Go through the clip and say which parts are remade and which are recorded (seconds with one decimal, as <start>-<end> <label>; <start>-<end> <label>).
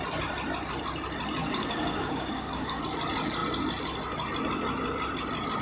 0.0-1.4 recorded; 1.4-2.8 remade; 2.8-5.6 recorded